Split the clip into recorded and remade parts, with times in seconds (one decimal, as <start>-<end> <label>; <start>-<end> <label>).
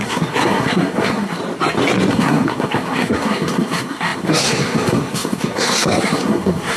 0.0-1.4 remade; 1.4-2.1 recorded; 2.1-6.8 remade